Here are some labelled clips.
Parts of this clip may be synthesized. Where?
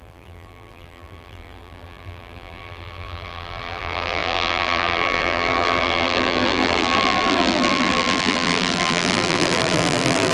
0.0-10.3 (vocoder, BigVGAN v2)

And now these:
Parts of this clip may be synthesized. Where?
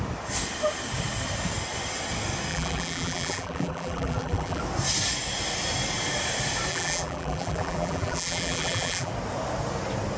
2.5-4.6 (vocoder, BigVGAN v2); 6.7-9.1